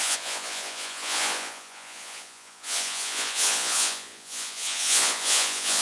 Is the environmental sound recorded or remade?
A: remade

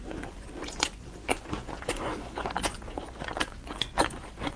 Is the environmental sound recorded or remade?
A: remade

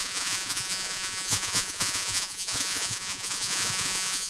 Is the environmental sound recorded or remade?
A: remade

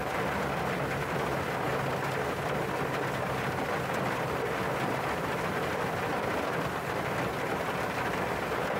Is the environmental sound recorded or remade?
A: recorded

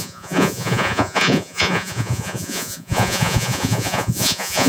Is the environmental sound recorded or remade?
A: remade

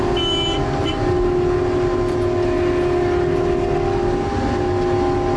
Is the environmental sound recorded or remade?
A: recorded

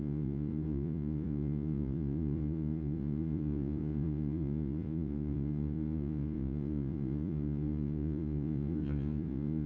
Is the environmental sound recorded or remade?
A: remade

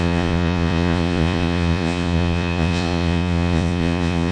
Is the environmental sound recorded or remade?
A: remade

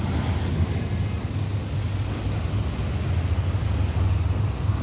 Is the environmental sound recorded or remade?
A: recorded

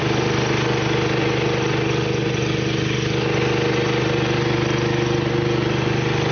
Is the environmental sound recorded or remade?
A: recorded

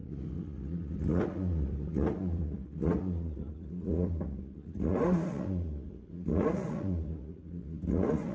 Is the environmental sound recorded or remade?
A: remade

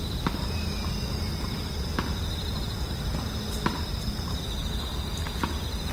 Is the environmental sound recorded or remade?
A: recorded